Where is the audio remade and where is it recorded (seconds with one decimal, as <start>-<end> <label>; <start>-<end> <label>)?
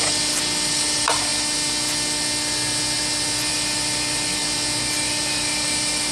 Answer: 0.0-1.3 remade; 1.3-3.5 recorded; 3.5-4.4 remade; 4.4-4.9 recorded; 4.9-6.1 remade